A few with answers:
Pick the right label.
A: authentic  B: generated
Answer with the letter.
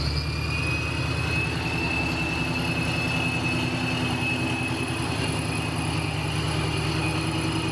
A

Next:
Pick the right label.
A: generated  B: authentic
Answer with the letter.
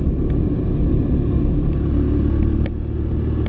B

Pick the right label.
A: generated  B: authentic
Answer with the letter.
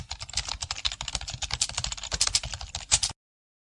B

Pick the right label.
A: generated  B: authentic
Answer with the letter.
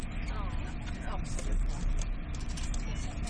B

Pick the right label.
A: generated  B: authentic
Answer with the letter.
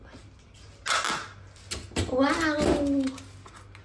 B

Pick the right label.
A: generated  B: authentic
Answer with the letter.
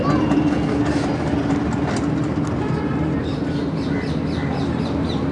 B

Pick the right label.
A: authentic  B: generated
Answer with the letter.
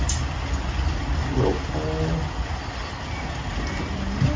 A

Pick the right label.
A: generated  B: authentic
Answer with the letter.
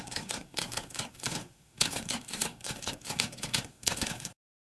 A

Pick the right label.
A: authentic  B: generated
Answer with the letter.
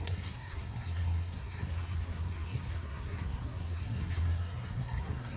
B